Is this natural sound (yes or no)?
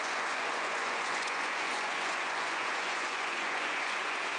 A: no